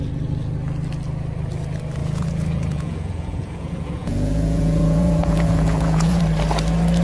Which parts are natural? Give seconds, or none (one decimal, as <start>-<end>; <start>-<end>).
0.0-2.0; 6.2-7.0